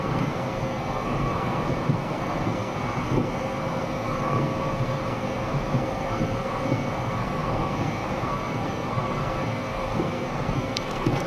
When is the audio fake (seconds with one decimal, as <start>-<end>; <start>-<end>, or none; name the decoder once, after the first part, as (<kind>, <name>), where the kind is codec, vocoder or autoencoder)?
0.0-11.3 (codec, SNAC)